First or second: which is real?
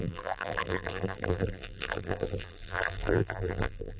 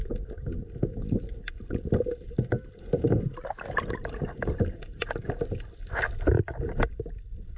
second